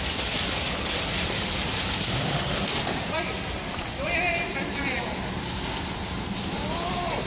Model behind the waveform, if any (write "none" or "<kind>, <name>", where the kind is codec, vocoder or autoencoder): vocoder, BigVGAN v2